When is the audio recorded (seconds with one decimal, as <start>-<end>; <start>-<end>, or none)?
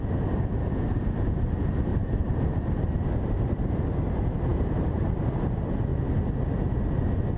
0.0-1.9; 3.6-4.5; 5.3-7.4